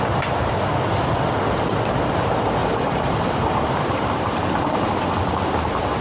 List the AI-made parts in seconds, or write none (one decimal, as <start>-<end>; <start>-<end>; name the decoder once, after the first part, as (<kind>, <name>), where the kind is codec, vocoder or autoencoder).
2.6-4.5 (vocoder, BigVGAN v2)